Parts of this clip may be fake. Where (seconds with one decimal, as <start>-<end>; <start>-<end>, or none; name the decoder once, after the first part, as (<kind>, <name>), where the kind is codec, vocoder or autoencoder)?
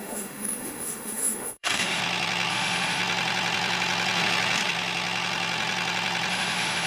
0.0-2.0 (autoencoder, DAC-VAE); 2.5-3.0; 6.3-6.9